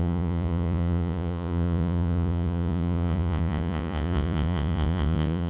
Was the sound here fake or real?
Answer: fake